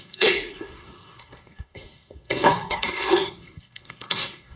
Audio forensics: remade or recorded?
remade